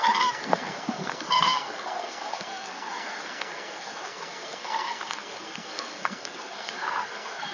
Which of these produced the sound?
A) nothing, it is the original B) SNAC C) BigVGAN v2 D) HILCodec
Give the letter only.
B